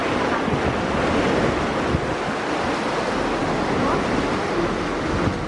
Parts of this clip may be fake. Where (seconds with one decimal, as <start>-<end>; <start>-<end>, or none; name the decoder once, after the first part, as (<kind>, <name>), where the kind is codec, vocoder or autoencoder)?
none